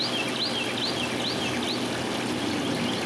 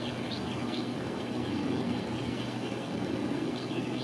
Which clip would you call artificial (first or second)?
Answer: second